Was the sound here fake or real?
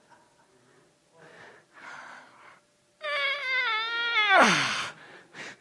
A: real